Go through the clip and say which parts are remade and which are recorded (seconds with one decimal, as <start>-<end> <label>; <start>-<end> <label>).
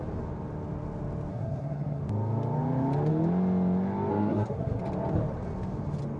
0.0-1.3 recorded; 1.3-2.0 remade; 2.0-4.1 recorded; 4.1-4.8 remade; 4.8-6.2 recorded